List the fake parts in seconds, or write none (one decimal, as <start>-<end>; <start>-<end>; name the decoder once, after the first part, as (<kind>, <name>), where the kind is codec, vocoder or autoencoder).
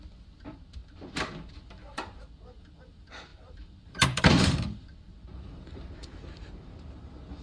0.8-2.2 (vocoder, BigVGAN v2); 3.3-7.0